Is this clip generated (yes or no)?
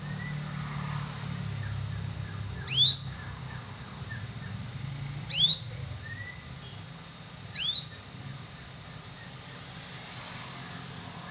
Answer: no